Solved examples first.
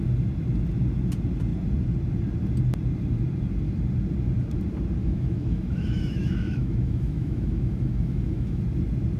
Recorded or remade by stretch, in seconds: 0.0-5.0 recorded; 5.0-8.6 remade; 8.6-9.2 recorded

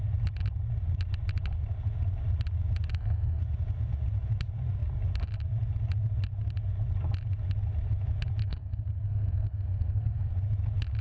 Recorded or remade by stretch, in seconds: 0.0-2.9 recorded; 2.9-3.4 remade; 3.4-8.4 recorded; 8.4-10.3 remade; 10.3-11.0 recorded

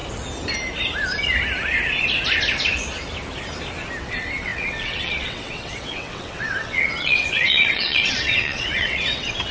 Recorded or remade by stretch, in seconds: 0.0-4.0 recorded; 4.0-9.5 remade

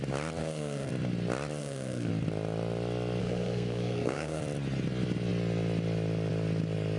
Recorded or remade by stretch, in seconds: 0.0-0.4 recorded; 0.4-0.9 remade; 0.9-1.6 recorded; 1.6-2.1 remade; 2.1-3.2 recorded; 3.2-4.4 remade; 4.4-7.0 recorded

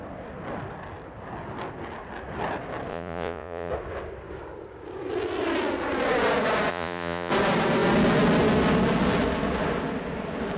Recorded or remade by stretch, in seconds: 0.0-2.9 recorded; 2.9-3.7 remade; 3.7-6.7 recorded; 6.7-7.3 remade; 7.3-10.6 recorded

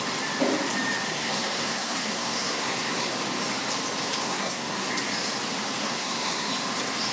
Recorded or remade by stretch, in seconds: 0.0-1.1 recorded; 1.1-3.1 remade; 3.1-4.2 recorded; 4.2-4.9 remade; 4.9-5.8 recorded; 5.8-6.5 remade; 6.5-7.1 recorded

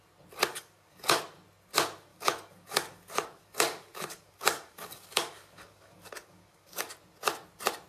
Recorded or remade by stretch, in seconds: 0.0-0.5 recorded; 0.5-1.2 remade; 1.2-2.1 recorded; 2.1-6.8 remade; 6.8-7.9 recorded